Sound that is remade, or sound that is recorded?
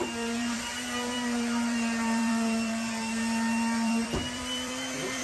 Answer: remade